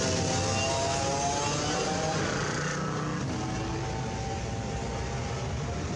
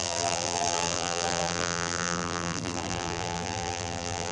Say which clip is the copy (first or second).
second